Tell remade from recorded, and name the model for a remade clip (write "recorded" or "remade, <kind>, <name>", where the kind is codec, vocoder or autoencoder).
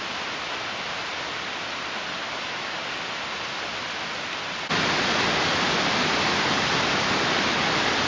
recorded